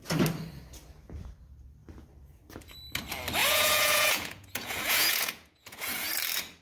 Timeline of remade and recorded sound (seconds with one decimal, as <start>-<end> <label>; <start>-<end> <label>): 0.0-3.4 recorded; 3.4-5.9 remade; 5.9-6.6 recorded